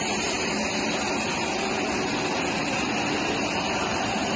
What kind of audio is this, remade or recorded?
remade